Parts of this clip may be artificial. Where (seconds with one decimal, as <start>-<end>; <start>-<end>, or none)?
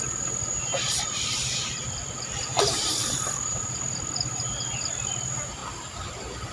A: 0.0-5.6